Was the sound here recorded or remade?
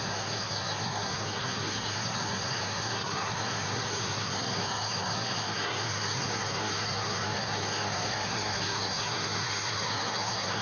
remade